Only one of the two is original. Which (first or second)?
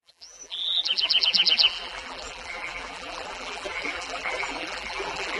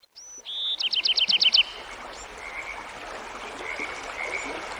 second